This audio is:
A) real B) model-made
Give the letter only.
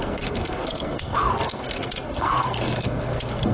B